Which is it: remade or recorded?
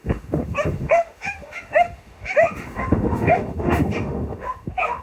remade